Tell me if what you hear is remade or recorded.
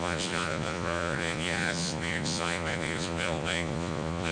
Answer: remade